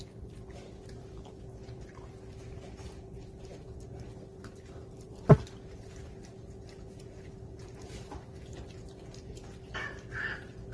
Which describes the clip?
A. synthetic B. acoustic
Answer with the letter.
B